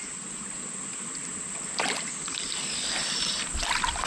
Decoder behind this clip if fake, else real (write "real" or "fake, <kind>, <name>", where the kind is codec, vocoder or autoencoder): fake, vocoder, BigVGAN v2